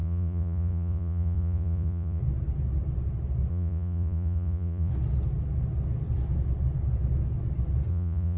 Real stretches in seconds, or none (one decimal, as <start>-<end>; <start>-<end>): 2.2-3.5; 4.9-7.9